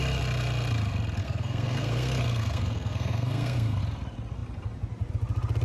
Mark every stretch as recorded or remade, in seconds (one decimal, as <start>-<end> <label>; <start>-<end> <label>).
0.0-1.2 recorded; 1.2-3.8 remade; 3.8-5.6 recorded